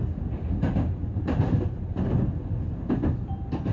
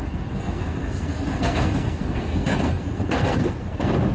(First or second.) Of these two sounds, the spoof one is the second